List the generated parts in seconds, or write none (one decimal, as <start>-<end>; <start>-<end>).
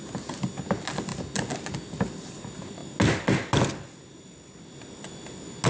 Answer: none